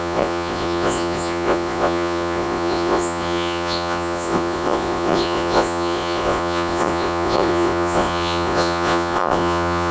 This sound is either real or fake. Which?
fake